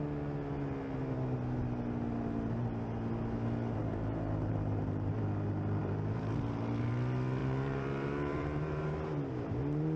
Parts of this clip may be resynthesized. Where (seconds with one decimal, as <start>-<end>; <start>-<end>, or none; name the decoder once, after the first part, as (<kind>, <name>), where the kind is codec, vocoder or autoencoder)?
3.8-5.1 (vocoder, BigVGAN v2); 5.8-6.9; 7.4-8.9